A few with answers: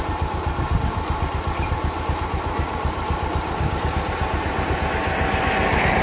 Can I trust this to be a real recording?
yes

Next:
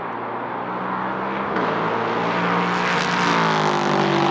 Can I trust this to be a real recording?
yes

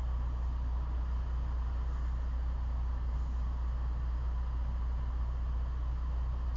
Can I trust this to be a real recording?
yes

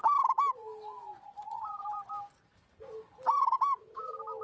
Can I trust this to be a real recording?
yes